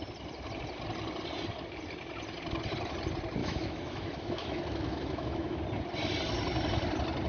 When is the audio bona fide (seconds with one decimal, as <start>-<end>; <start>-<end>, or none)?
0.0-3.4; 5.6-7.3